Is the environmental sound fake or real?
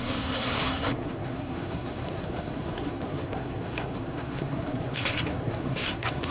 fake